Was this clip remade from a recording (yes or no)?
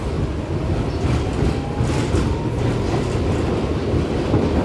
no